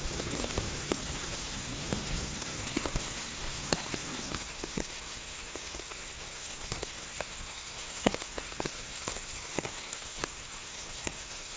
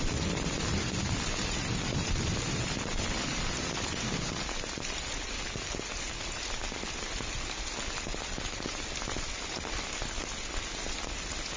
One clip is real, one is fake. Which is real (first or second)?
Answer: second